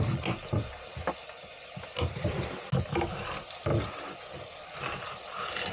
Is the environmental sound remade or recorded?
recorded